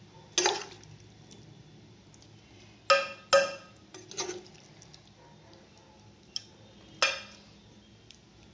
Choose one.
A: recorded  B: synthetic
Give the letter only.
A